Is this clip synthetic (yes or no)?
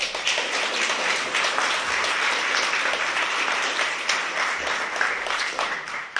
yes